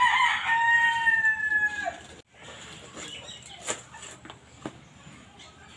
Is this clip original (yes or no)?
yes